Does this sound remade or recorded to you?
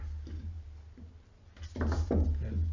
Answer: recorded